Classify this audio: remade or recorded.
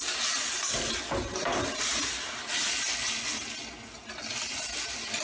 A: recorded